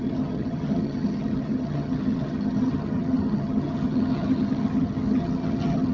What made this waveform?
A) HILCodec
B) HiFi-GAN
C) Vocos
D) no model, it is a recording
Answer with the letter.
B